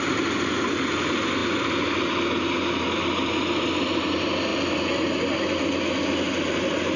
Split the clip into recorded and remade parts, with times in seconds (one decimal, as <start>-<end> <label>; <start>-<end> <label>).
0.0-7.0 recorded